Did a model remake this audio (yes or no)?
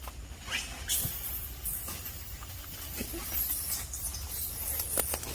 no